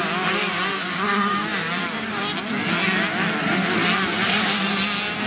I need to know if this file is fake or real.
real